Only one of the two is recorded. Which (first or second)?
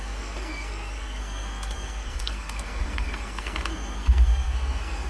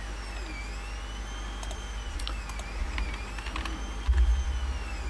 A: second